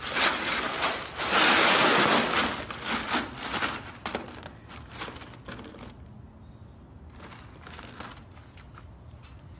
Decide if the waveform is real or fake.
real